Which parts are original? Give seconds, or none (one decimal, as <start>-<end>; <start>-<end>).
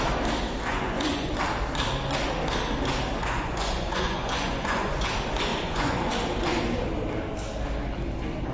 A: 0.0-0.7; 1.3-3.2; 5.1-5.5; 6.1-8.5